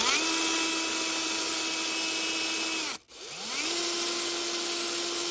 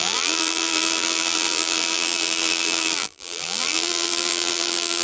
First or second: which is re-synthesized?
second